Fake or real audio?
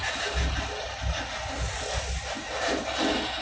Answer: real